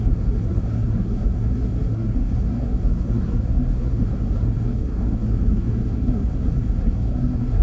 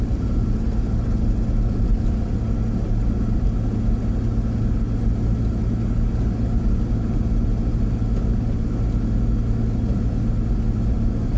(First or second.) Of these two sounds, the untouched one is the second